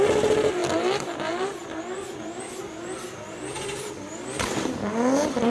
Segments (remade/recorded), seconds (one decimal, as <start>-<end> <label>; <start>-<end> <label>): 0.0-5.5 recorded